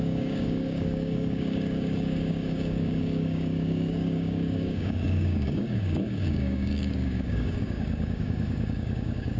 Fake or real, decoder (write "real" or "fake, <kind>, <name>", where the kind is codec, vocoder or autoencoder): fake, codec, DAC